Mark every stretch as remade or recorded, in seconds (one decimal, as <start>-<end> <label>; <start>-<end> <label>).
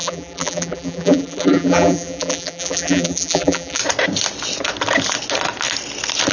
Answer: 0.0-3.8 remade; 3.8-6.3 recorded